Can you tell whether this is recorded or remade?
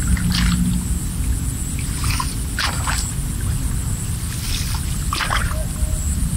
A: recorded